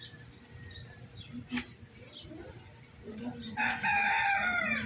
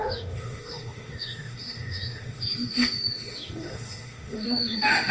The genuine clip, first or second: first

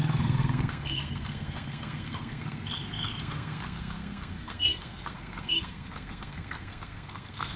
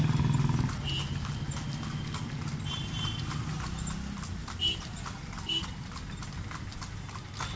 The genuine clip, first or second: second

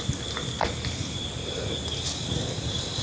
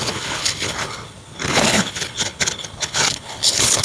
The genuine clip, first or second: first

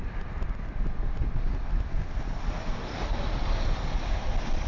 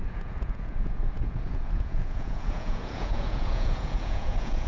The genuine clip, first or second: first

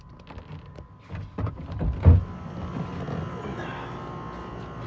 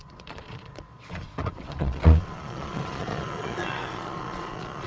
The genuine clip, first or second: first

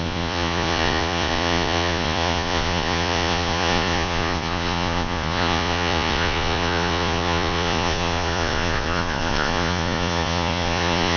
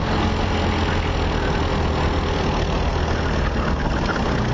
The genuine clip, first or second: second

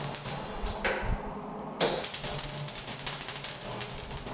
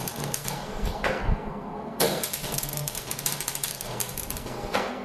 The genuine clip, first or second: first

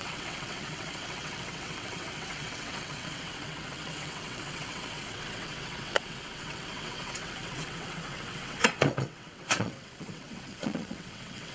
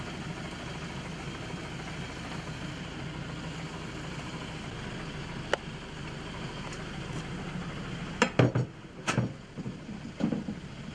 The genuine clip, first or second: second